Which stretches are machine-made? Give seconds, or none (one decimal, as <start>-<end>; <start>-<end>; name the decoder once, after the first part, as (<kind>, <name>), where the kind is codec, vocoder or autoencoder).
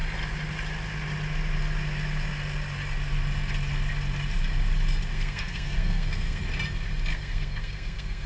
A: 5.1-6.4 (codec, SNAC); 7.1-8.3